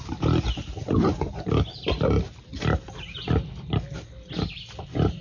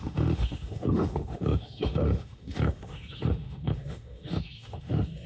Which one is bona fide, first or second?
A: first